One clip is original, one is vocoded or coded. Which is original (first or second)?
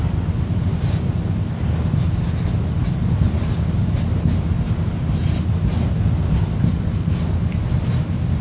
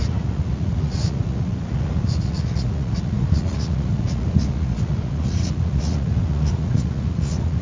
first